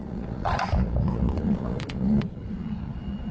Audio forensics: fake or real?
fake